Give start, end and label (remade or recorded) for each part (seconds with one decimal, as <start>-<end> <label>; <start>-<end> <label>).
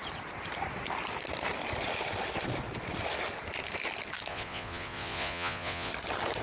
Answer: 0.0-4.3 recorded; 4.3-5.9 remade; 5.9-6.4 recorded